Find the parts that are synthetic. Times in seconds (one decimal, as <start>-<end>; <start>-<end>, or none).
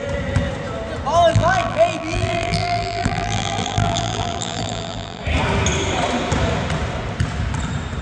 1.3-5.2